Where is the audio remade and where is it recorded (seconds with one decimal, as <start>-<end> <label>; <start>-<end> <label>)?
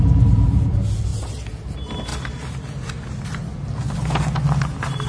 0.0-5.1 recorded